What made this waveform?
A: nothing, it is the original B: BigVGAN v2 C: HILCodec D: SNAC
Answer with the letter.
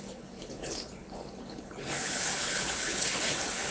C